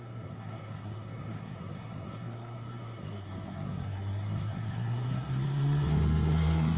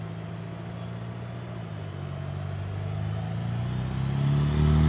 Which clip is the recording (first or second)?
second